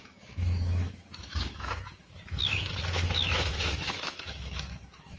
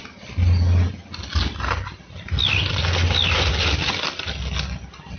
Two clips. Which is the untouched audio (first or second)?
second